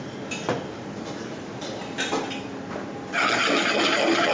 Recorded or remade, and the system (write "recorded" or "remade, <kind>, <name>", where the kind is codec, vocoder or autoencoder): recorded